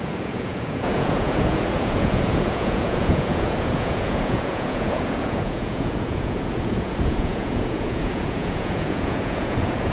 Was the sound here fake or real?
fake